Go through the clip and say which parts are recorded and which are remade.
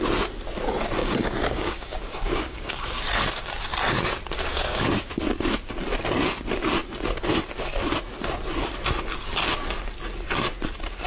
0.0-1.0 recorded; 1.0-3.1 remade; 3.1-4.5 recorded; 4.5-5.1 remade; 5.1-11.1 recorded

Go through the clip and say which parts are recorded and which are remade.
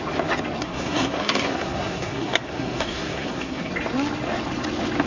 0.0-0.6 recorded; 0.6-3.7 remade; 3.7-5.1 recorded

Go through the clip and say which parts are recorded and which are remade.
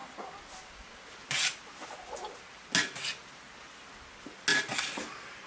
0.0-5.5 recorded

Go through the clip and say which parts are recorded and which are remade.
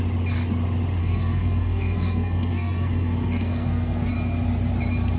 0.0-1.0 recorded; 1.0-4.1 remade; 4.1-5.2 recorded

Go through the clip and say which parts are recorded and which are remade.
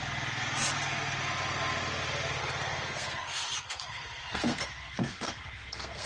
0.0-2.4 recorded; 2.4-6.1 remade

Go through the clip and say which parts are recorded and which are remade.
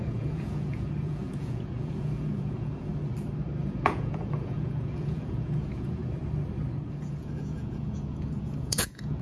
0.0-2.9 remade; 2.9-3.6 recorded; 3.6-6.0 remade; 6.0-6.9 recorded; 6.9-9.2 remade